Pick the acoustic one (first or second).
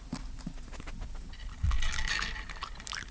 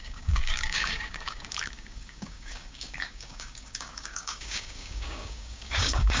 first